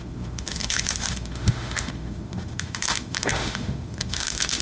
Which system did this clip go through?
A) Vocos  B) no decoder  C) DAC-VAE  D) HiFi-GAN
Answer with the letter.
C